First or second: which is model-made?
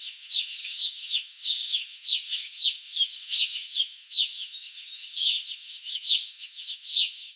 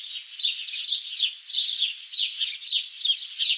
first